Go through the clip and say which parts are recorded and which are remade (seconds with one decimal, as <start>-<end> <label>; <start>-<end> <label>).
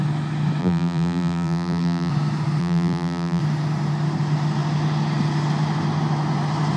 0.0-0.6 recorded; 0.6-2.1 remade; 2.1-2.6 recorded; 2.6-3.4 remade; 3.4-6.8 recorded